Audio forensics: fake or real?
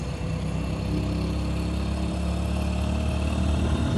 real